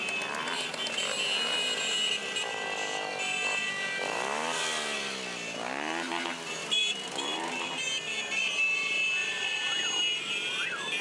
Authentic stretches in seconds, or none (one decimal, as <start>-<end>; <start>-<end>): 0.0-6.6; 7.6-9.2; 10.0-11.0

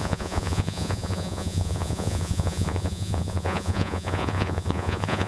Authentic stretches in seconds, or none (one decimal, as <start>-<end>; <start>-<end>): none

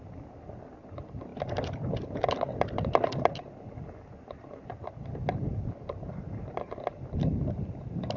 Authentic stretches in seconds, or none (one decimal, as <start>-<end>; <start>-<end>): 0.0-5.5; 6.7-8.2